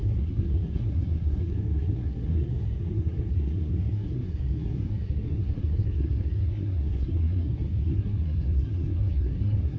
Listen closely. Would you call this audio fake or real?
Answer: fake